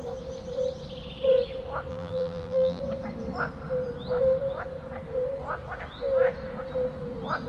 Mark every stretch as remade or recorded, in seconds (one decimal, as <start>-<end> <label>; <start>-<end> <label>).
0.0-1.9 recorded; 1.9-2.8 remade; 2.8-7.5 recorded